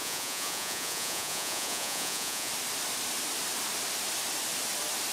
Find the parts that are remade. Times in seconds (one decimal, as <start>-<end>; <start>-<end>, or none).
0.0-2.5